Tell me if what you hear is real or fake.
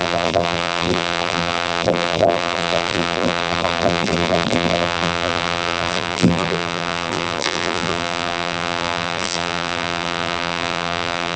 fake